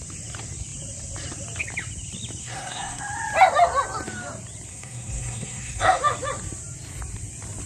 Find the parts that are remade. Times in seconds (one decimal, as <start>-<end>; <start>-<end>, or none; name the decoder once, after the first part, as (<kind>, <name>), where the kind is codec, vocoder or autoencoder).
2.4-3.0 (codec, SNAC); 4.7-6.0